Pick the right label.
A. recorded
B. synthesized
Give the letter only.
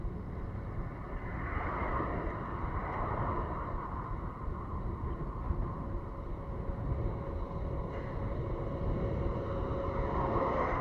A